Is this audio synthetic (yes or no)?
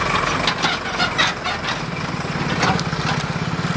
no